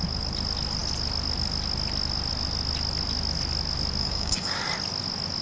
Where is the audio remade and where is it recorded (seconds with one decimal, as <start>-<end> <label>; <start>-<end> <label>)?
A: 0.0-4.0 recorded; 4.0-4.6 remade; 4.6-5.4 recorded

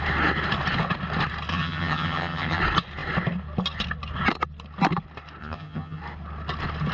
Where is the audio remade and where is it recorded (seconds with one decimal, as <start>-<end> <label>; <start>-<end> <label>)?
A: 0.0-1.5 recorded; 1.5-2.6 remade; 2.6-5.4 recorded; 5.4-6.0 remade; 6.0-6.9 recorded